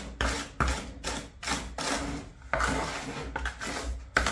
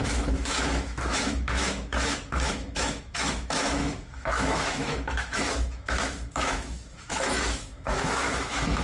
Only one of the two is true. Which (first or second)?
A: first